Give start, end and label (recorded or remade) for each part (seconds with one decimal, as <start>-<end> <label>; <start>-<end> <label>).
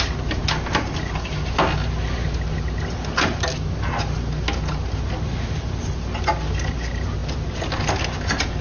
0.0-8.6 recorded